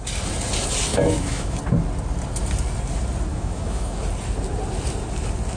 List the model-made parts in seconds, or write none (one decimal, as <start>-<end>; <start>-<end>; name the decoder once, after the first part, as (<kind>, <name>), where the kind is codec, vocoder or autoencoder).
0.9-1.6 (autoencoder, DAC-VAE); 3.3-4.0